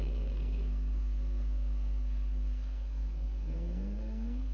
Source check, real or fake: fake